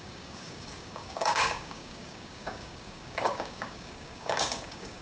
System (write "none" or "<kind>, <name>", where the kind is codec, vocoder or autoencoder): codec, DAC